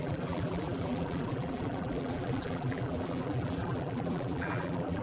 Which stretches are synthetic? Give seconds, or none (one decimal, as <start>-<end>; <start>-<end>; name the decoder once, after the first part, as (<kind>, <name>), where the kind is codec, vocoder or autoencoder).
0.0-5.0 (vocoder, BigVGAN v2)